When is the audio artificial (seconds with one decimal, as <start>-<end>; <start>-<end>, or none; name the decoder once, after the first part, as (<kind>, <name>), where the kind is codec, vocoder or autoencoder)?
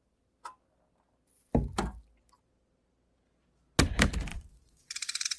4.3-5.4 (vocoder, Vocos)